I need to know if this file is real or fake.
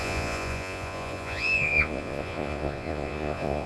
fake